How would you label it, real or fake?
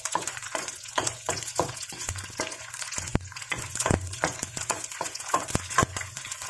fake